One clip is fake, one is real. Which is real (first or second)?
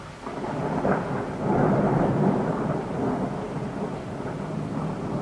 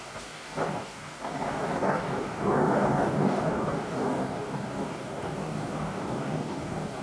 first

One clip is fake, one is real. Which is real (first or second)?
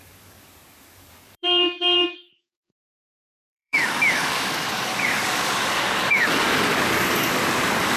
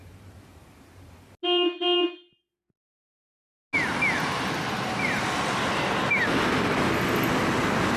second